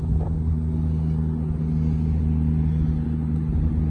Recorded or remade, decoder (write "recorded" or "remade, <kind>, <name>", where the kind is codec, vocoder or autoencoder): recorded